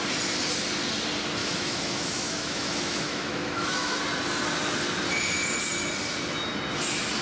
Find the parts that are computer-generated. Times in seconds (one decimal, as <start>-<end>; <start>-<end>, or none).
1.4-4.0